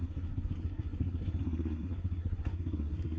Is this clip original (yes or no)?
no